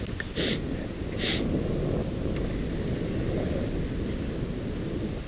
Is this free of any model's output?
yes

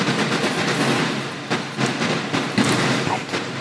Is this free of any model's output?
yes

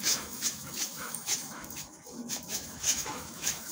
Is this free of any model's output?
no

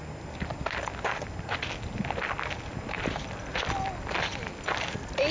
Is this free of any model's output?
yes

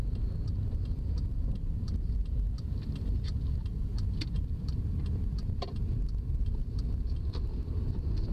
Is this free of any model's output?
no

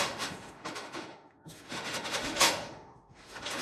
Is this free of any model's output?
no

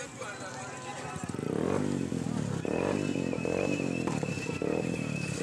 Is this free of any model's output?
yes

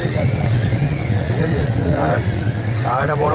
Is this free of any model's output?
no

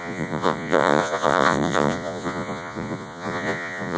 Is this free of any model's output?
no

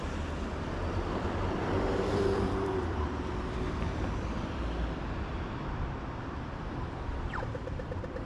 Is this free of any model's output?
no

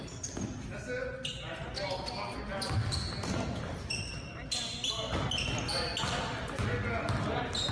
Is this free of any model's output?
yes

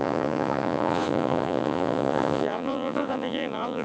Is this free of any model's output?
no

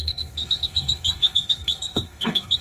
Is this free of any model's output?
no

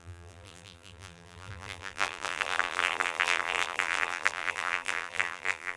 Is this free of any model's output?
no